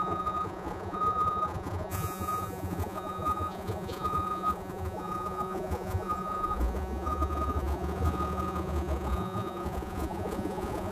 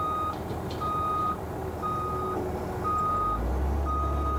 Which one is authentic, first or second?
second